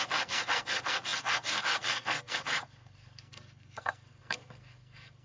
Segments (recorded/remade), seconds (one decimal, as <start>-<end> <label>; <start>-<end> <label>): 0.0-5.2 remade